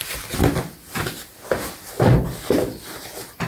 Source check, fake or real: real